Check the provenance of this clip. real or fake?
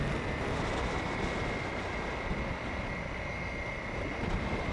real